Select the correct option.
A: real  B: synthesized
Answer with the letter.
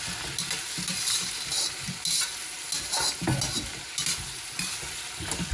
A